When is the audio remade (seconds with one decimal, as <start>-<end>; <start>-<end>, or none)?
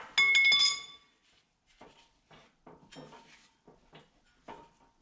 none